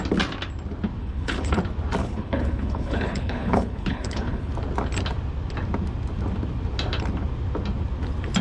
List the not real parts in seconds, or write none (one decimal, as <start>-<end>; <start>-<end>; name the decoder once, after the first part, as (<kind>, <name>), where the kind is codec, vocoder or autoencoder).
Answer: 1.0-1.6 (codec, HILCodec); 2.0-4.5